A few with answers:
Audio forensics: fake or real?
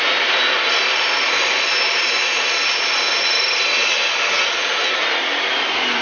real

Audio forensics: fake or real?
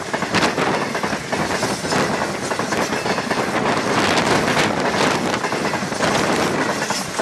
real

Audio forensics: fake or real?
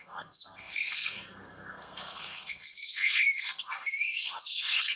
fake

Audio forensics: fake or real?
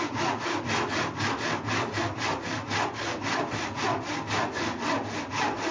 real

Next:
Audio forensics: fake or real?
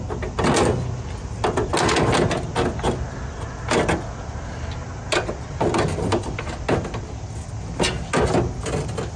real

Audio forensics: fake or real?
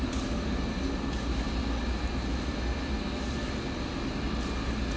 real